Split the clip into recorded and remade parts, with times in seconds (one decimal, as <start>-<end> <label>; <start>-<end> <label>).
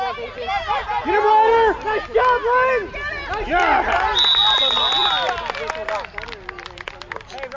0.0-7.6 recorded